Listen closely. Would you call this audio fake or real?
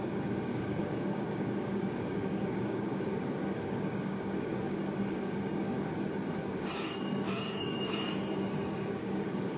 fake